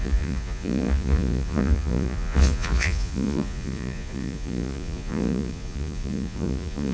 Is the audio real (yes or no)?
no